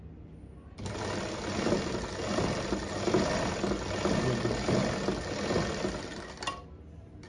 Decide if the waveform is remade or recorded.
recorded